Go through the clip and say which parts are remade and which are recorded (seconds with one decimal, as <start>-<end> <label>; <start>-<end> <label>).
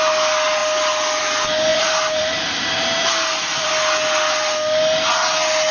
0.0-1.7 recorded; 1.7-3.7 remade; 3.7-5.7 recorded